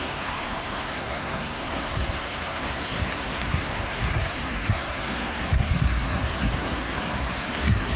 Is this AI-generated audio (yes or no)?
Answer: yes